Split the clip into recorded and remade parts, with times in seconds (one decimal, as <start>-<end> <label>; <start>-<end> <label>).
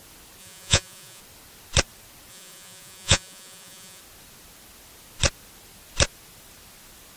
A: 0.0-0.4 recorded; 0.4-1.2 remade; 1.2-2.3 recorded; 2.3-4.0 remade; 4.0-7.2 recorded